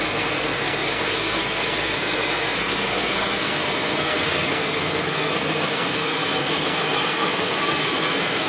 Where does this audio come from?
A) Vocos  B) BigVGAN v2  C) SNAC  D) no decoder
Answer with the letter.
C